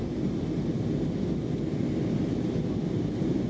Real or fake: real